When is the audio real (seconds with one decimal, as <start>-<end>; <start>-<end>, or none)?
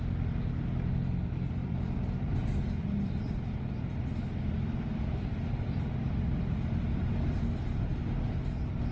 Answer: 0.0-1.6; 5.9-6.8; 7.6-8.9